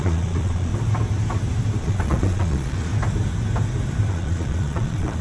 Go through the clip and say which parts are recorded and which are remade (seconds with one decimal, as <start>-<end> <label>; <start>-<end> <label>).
0.0-0.7 remade; 0.7-1.8 recorded; 1.8-2.9 remade; 2.9-4.1 recorded; 4.1-5.2 remade